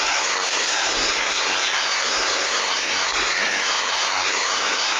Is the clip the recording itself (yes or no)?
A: no